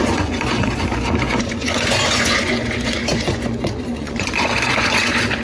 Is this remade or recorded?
remade